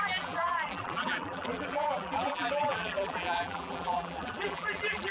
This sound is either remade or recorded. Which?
remade